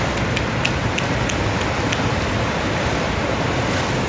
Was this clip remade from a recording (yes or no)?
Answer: no